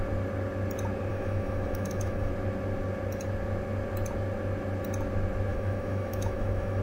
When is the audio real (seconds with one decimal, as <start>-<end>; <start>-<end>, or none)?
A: 0.0-1.1; 2.3-5.5